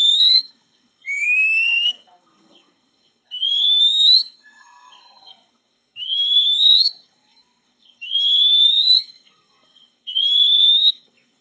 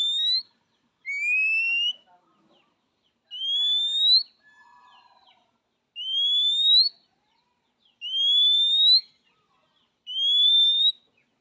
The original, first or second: second